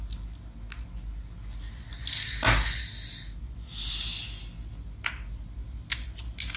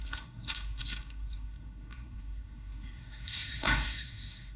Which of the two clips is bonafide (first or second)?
first